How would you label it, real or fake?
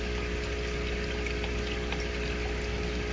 real